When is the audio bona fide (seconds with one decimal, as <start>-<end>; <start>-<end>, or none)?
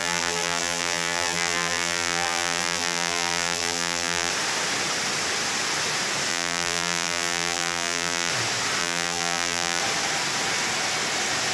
4.3-6.3; 8.3-8.8; 9.8-11.5